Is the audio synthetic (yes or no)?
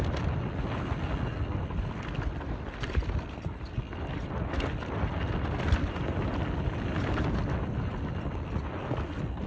no